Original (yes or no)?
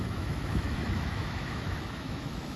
no